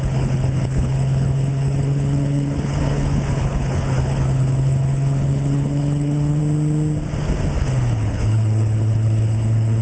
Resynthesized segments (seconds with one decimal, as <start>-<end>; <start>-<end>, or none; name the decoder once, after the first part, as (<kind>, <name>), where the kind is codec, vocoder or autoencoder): 0.0-6.4 (codec, HILCodec); 7.6-9.8